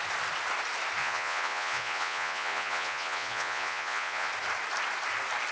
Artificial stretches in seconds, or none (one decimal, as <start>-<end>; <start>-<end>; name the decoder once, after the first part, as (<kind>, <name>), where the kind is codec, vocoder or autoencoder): 1.0-4.3 (vocoder, Vocos)